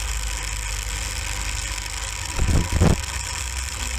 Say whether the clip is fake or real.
real